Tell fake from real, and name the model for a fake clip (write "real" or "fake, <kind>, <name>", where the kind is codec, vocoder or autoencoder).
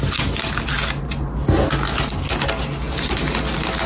real